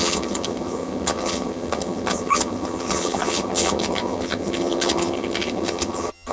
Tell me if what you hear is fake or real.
fake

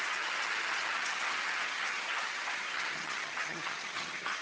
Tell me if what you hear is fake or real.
fake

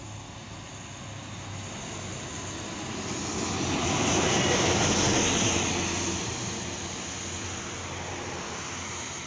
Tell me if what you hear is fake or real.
real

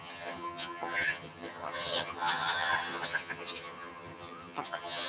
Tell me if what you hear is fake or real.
fake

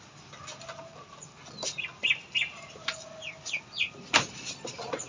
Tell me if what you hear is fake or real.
real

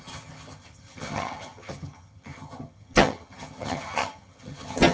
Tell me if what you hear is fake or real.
fake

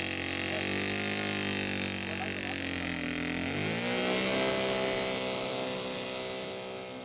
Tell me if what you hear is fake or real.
real